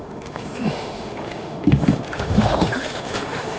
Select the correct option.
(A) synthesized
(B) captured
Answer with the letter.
A